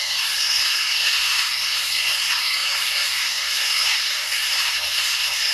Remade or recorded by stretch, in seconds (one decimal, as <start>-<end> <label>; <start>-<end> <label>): 0.0-5.5 remade